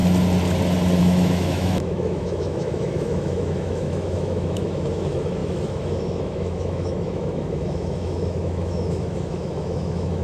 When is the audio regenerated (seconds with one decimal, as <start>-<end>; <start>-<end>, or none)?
1.0-10.2